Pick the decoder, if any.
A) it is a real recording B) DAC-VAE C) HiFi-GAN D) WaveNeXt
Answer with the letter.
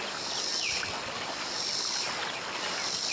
A